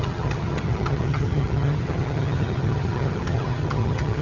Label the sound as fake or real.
fake